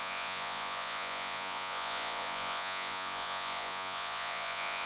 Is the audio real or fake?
fake